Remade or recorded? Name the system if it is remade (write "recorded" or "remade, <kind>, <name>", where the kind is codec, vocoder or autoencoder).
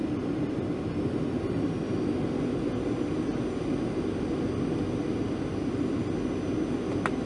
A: recorded